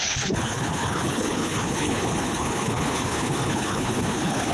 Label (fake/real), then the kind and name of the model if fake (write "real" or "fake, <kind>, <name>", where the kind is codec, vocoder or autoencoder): fake, codec, HILCodec